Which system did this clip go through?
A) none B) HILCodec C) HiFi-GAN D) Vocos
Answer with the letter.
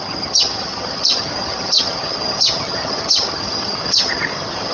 C